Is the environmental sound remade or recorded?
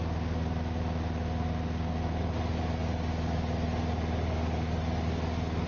recorded